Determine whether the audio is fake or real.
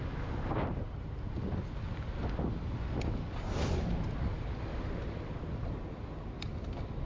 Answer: real